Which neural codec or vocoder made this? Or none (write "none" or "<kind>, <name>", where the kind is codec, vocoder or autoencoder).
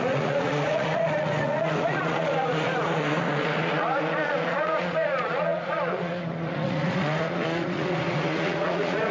vocoder, Vocos